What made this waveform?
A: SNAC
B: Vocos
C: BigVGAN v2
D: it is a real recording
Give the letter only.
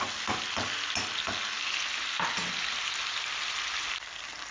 D